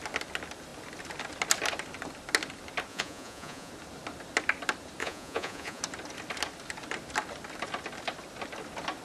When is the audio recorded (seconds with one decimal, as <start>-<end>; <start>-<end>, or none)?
0.0-2.9; 3.7-5.0; 5.8-9.0